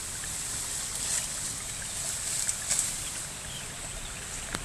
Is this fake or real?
real